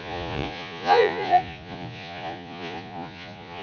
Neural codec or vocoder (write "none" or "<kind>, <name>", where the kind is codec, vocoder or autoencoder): vocoder, Vocos